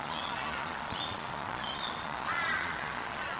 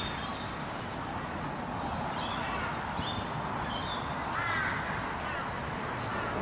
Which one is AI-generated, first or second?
first